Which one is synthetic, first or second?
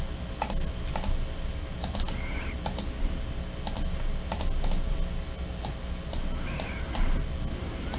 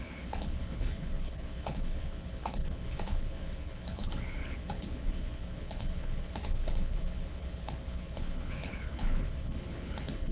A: second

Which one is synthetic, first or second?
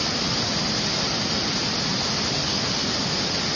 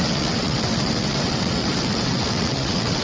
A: second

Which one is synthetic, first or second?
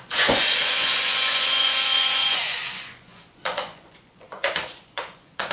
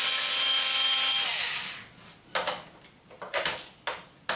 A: first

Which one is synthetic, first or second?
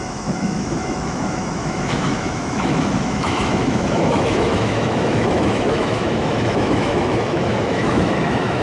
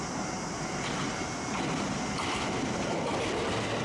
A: first